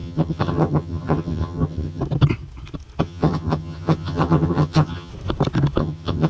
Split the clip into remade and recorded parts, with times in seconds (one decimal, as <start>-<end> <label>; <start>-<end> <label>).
0.0-2.0 remade; 2.0-3.0 recorded; 3.0-5.1 remade; 5.1-5.8 recorded; 5.8-6.3 remade